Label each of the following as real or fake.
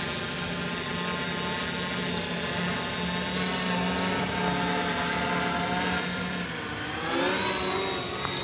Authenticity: real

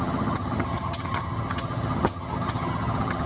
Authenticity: fake